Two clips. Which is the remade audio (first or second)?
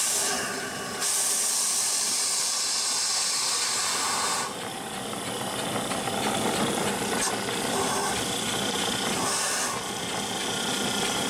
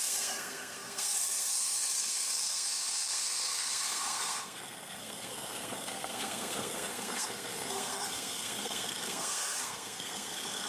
second